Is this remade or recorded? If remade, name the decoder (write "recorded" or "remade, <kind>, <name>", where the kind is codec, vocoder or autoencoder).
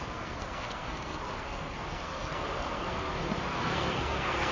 remade, codec, SNAC